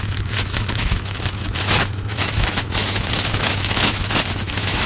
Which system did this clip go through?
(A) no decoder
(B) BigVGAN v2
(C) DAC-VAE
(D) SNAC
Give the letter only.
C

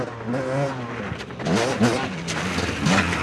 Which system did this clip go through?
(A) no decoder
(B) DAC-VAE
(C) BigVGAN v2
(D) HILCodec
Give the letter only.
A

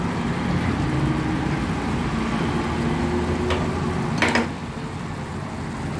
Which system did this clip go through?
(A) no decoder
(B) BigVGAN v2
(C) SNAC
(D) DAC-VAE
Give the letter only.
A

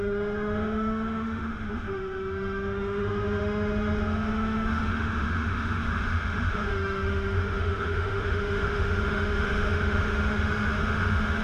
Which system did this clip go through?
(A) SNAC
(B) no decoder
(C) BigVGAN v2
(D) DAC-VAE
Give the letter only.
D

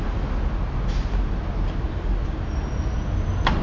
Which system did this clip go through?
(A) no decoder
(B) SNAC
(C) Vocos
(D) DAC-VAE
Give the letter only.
A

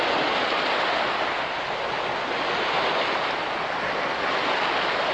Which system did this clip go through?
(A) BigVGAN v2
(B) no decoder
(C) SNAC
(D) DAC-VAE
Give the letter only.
B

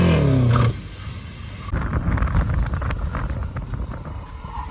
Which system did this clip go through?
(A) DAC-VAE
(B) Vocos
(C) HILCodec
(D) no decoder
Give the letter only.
D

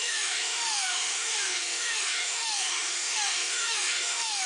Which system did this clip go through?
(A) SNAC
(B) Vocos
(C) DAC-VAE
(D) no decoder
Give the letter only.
C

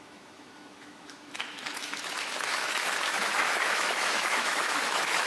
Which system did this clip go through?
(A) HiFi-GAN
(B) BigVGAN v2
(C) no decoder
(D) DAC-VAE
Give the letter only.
D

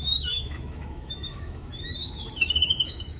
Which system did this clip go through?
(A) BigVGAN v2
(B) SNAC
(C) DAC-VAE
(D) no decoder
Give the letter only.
C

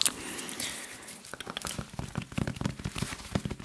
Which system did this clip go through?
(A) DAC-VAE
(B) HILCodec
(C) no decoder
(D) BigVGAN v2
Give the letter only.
C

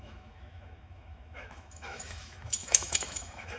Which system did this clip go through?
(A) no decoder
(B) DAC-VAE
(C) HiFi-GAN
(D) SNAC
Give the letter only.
B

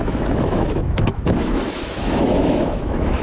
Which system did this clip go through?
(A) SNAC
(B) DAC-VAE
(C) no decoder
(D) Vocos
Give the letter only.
B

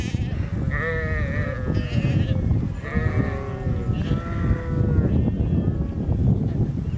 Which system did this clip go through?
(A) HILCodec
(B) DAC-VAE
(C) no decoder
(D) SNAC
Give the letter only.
C